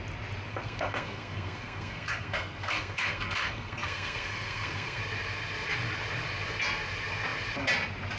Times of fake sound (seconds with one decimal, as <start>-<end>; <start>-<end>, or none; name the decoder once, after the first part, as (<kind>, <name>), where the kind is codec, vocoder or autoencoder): 0.5-5.0 (codec, SNAC)